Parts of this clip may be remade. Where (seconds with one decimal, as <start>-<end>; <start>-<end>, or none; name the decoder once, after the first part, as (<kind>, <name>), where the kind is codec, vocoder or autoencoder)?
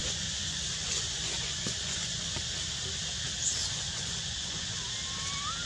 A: 0.0-2.4 (vocoder, Vocos); 3.6-4.8